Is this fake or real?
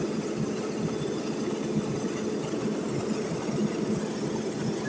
real